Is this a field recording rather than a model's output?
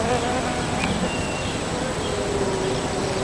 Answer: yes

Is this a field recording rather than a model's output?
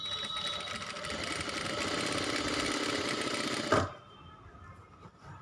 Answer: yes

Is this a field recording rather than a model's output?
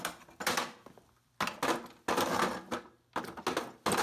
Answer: yes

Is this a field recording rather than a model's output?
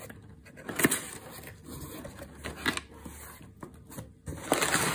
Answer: yes